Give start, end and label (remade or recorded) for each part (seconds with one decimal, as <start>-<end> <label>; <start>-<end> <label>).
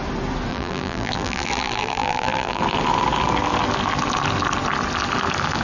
0.0-0.5 recorded; 0.5-2.6 remade; 2.6-5.6 recorded